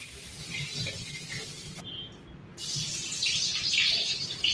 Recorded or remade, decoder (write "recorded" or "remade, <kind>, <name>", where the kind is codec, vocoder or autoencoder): recorded